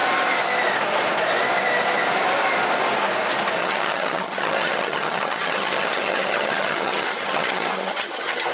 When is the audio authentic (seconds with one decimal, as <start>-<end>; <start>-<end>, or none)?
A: 0.0-3.6